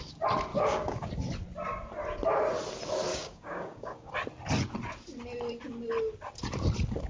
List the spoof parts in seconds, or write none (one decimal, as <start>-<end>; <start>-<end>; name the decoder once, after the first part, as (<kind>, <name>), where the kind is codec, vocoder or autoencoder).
0.5-1.1 (codec, DAC); 3.1-4.1

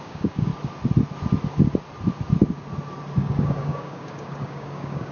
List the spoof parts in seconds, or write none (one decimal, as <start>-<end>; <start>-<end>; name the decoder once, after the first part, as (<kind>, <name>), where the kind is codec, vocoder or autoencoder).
0.0-0.5 (codec, DAC); 3.2-5.1